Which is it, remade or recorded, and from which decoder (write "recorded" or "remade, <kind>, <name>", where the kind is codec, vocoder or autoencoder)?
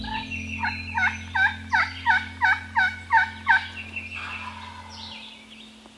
recorded